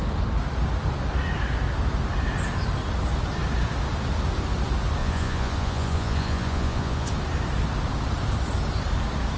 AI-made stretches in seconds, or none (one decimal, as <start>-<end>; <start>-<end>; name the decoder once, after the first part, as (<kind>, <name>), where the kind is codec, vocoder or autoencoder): 5.0-7.1 (vocoder, Vocos)